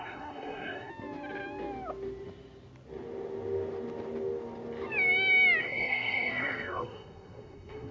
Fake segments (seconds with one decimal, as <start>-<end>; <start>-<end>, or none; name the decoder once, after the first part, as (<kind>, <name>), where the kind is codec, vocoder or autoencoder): 0.0-0.9 (codec, SNAC); 5.6-7.9